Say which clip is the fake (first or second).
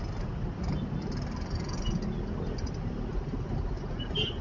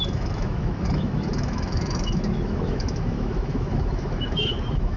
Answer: second